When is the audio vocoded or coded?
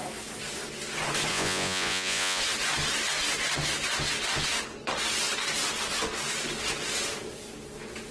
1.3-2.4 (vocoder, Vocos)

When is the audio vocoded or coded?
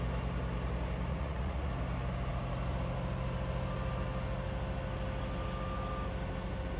1.1-1.7 (vocoder, Vocos)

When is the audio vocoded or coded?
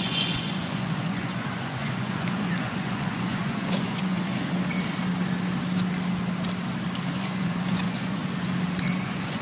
0.0-4.3 (vocoder, Vocos); 7.1-8.2; 9.0-9.4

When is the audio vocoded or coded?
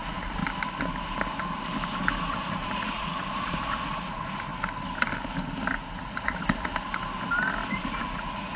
0.0-0.4 (vocoder, Vocos); 2.2-4.5; 6.0-6.7; 7.7-8.6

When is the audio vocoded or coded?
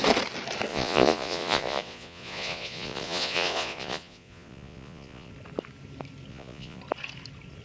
0.7-5.3 (vocoder, Vocos); 6.3-6.8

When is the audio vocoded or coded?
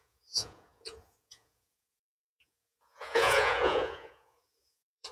0.0-5.1 (vocoder, Vocos)